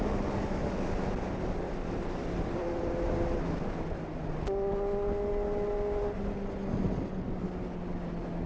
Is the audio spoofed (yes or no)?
no